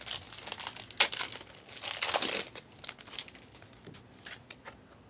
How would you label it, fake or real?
real